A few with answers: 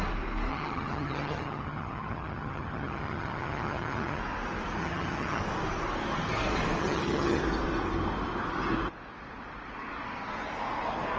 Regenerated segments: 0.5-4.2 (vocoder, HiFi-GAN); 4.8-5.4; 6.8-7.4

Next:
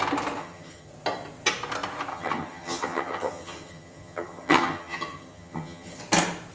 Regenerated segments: 0.4-0.9 (vocoder, HiFi-GAN); 2.1-6.0

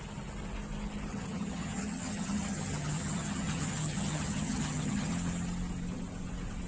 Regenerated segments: 1.1-5.1 (vocoder, HiFi-GAN)

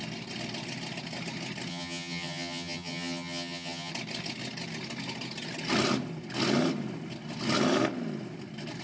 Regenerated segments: 1.7-3.9 (vocoder, HiFi-GAN)

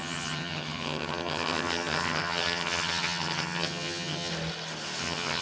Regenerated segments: 0.0-4.3 (vocoder, HiFi-GAN); 5.0-5.4